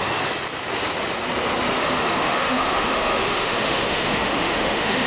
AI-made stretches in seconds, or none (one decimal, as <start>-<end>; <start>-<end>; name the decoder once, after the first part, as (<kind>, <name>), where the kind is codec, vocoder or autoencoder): 1.8-5.1 (autoencoder, DAC-VAE)